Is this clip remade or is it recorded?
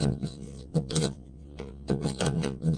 remade